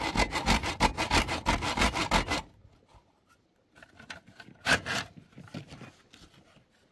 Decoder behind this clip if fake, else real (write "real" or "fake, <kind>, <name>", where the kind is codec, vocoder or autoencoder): real